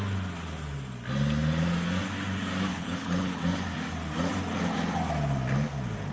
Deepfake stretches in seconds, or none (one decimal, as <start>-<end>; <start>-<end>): 2.7-3.4